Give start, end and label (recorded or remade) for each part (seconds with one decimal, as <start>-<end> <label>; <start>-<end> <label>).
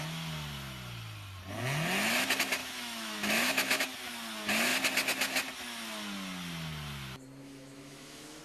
0.0-2.6 recorded; 2.6-3.8 remade; 3.8-7.4 recorded; 7.4-8.4 remade